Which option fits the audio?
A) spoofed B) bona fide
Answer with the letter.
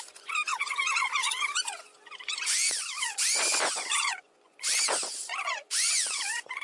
A